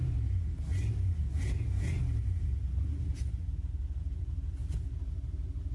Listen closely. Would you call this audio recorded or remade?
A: recorded